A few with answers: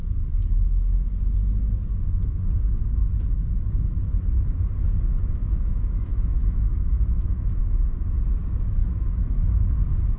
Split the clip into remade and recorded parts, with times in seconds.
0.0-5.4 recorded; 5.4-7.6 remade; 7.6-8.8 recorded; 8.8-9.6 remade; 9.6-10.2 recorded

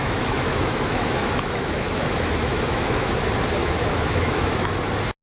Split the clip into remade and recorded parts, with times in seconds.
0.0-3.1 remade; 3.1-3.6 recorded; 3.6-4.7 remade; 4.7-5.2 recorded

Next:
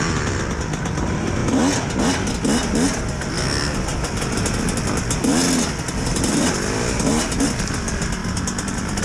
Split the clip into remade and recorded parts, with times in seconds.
0.0-9.0 recorded

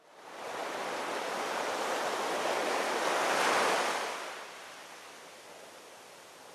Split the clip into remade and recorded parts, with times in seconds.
0.0-0.6 recorded; 0.6-1.9 remade; 1.9-6.5 recorded

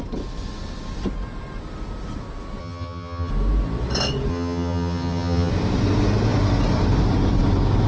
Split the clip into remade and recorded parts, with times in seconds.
0.0-2.6 recorded; 2.6-3.3 remade; 3.3-4.3 recorded; 4.3-5.5 remade; 5.5-7.9 recorded

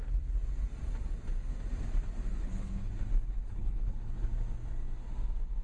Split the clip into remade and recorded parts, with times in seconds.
0.0-2.4 recorded; 2.4-2.9 remade; 2.9-3.4 recorded; 3.4-4.1 remade; 4.1-5.6 recorded

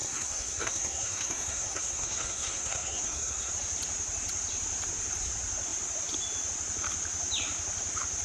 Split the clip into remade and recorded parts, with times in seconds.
0.0-3.5 remade; 3.5-8.2 recorded

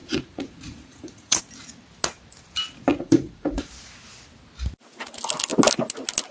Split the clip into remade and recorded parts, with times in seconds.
0.0-1.4 remade; 1.4-2.9 recorded; 2.9-3.7 remade; 3.7-6.3 recorded